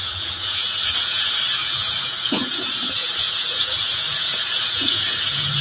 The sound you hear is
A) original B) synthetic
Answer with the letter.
B